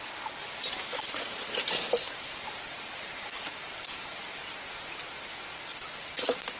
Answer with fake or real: real